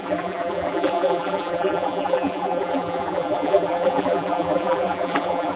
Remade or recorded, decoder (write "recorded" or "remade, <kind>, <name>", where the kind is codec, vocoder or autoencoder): remade, vocoder, BigVGAN v2